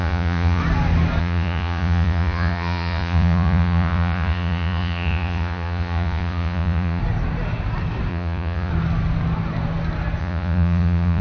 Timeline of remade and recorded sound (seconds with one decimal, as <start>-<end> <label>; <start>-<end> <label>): 0.0-0.6 remade; 0.6-1.2 recorded; 1.2-7.0 remade; 7.0-8.1 recorded; 8.1-8.7 remade; 8.7-10.2 recorded; 10.2-11.2 remade

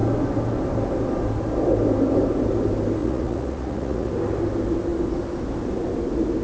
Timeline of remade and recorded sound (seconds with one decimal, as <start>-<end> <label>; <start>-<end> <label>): 0.0-3.0 recorded; 3.0-4.1 remade; 4.1-6.4 recorded

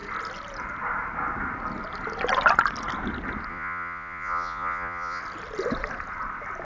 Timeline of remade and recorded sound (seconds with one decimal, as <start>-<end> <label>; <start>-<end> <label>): 0.0-3.5 recorded; 3.5-5.2 remade; 5.2-6.6 recorded

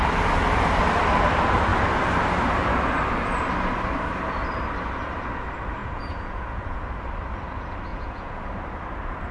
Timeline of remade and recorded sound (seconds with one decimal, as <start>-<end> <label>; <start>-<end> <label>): 0.0-5.8 recorded; 5.8-6.8 remade; 6.8-7.9 recorded; 7.9-8.5 remade; 8.5-9.3 recorded

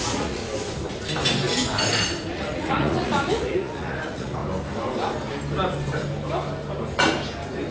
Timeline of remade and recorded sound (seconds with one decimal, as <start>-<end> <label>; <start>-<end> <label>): 0.0-0.4 remade; 0.4-2.3 recorded; 2.3-4.4 remade; 4.4-7.7 recorded